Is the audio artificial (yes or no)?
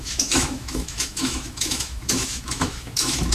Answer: yes